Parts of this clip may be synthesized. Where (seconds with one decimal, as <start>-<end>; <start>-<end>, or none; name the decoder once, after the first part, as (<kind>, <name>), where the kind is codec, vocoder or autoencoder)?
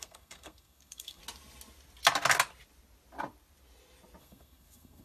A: 0.0-1.2 (codec, SNAC); 4.2-5.0